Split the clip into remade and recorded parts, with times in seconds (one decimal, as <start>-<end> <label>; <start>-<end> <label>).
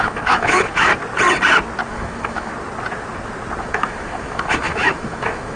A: 0.0-0.9 remade; 0.9-1.9 recorded; 1.9-2.5 remade; 2.5-3.6 recorded; 3.6-5.6 remade